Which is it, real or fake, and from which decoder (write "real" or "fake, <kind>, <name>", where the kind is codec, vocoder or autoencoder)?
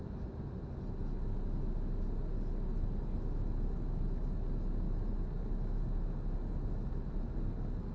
real